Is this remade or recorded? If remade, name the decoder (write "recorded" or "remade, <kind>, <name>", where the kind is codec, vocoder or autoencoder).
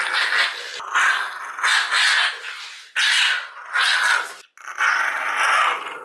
recorded